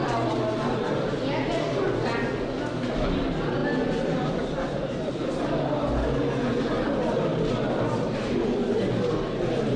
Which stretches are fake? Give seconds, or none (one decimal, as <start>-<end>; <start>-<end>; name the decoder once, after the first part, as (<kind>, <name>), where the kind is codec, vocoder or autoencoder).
none